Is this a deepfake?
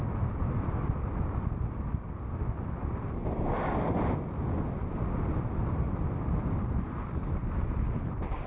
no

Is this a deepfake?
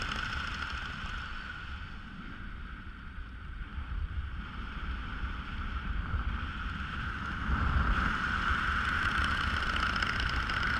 yes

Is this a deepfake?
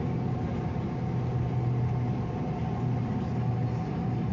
no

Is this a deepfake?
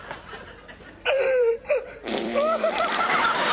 yes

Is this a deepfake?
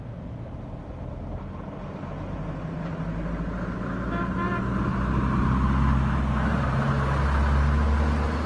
no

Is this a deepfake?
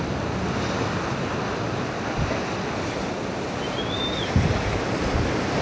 no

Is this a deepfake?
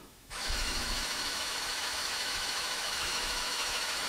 yes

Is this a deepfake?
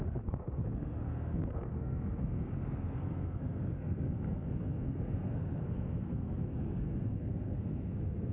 yes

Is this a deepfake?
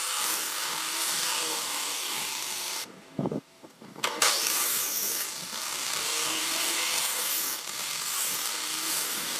yes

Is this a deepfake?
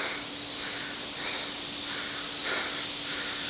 no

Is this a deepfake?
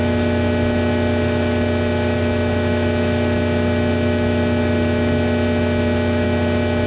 no